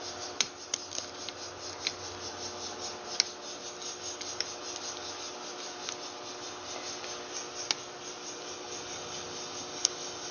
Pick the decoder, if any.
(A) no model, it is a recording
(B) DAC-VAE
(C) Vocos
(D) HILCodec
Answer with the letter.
A